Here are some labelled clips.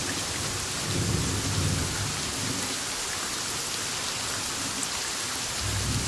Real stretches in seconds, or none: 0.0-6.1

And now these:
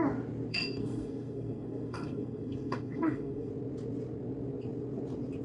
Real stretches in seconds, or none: 0.0-0.5; 3.5-5.4

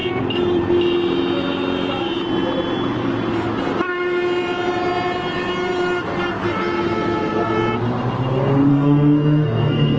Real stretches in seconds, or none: 0.0-8.7